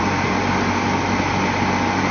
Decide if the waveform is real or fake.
real